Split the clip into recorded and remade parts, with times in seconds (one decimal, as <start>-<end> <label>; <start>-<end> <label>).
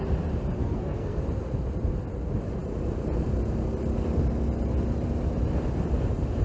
0.0-0.6 recorded; 0.6-1.2 remade; 1.2-6.4 recorded